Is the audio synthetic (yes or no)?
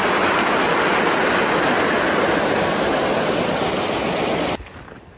no